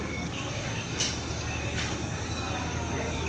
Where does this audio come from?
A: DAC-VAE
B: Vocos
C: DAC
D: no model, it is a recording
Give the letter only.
C